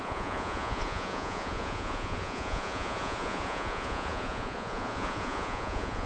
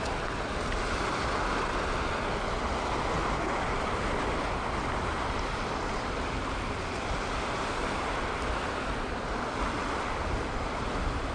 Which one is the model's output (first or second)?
first